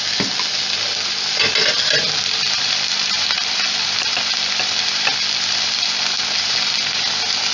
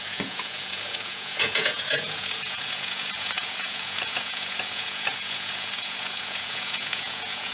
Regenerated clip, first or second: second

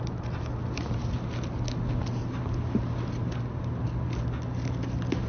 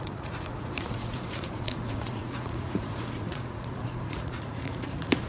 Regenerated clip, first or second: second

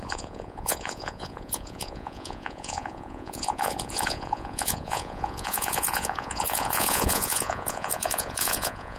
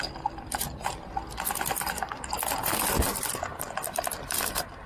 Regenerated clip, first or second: first